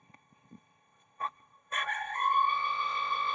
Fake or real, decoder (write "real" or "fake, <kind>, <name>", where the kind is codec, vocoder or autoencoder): fake, codec, ZipCodec